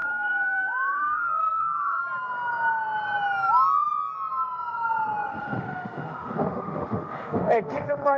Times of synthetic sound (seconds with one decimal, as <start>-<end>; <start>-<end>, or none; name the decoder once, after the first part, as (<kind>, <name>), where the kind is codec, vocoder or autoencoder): 0.0-2.0 (autoencoder, DAC-VAE); 5.3-8.2